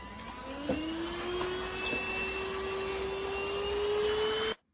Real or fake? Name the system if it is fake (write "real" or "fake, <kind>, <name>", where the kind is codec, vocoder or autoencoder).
real